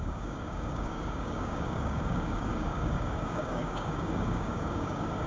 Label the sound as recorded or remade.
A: remade